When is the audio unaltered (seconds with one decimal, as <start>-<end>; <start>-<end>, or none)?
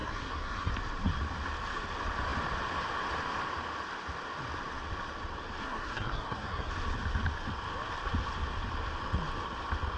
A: 0.7-5.6; 6.7-10.0